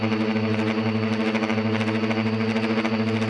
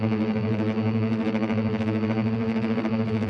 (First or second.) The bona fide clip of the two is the first